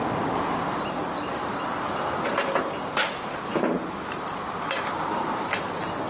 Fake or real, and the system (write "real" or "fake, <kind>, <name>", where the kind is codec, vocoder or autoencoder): real